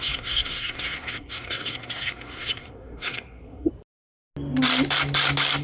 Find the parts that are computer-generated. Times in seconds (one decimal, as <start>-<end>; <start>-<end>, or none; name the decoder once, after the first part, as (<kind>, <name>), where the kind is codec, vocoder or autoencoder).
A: 0.0-3.7 (codec, SNAC)